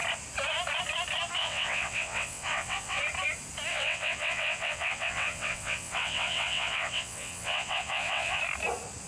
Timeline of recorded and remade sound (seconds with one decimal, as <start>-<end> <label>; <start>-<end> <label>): 0.0-1.4 recorded; 1.4-3.0 remade; 3.0-3.7 recorded; 3.7-8.4 remade; 8.4-9.1 recorded